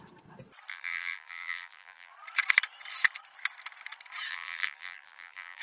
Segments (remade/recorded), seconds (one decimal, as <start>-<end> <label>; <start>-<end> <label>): 0.0-0.7 recorded; 0.7-2.1 remade; 2.1-4.3 recorded; 4.3-5.6 remade